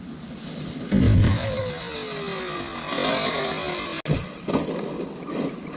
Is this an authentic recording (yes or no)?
yes